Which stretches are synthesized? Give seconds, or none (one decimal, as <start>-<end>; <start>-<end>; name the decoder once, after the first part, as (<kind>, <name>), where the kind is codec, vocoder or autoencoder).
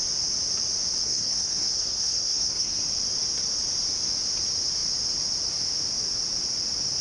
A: 1.0-2.8 (codec, SNAC)